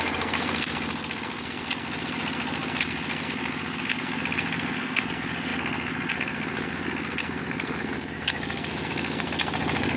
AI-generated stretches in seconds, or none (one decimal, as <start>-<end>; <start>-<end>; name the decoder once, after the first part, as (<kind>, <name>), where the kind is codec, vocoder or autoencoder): 0.0-10.0 (codec, SNAC)